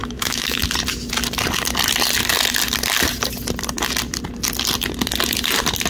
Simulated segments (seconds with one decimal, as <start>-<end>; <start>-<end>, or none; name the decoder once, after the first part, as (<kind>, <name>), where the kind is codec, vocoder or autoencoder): 0.0-0.6 (autoencoder, DAC-VAE)